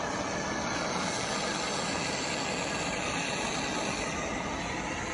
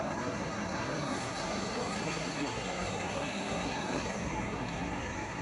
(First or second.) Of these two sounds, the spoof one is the second